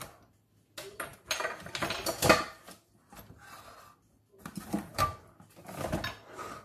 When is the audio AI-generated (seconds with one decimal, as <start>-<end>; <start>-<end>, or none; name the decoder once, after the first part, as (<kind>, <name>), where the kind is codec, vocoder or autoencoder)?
none